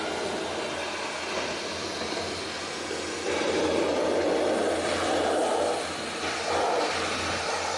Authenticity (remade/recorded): recorded